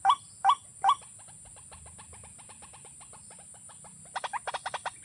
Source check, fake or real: real